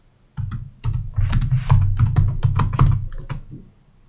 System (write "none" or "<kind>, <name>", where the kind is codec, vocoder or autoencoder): none